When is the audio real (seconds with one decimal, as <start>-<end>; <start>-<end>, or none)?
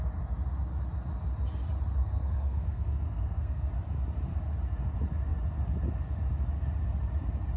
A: 0.0-2.0; 3.7-7.6